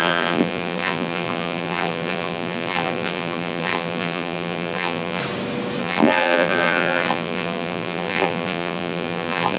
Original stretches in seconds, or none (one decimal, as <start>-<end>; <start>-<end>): 5.2-5.8